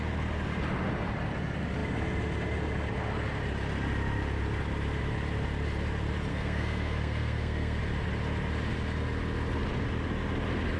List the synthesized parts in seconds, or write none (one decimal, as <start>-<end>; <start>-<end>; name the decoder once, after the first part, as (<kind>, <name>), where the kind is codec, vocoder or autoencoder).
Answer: 6.3-7.8 (codec, SNAC)